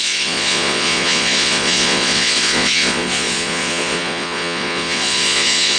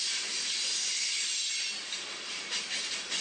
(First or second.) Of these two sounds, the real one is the second